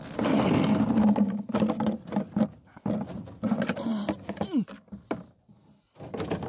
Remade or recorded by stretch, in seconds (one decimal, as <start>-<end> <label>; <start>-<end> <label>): 0.0-6.5 recorded